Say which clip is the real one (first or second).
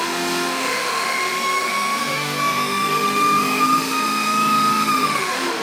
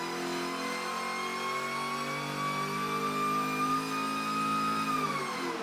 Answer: second